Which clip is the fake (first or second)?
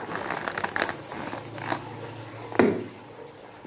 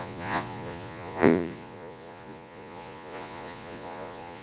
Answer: second